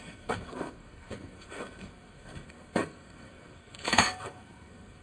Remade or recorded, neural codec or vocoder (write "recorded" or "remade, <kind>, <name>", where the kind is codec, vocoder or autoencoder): remade, codec, SNAC